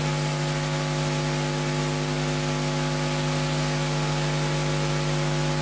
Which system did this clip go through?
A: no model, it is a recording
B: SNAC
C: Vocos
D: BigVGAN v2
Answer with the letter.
A